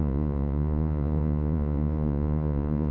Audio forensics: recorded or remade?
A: remade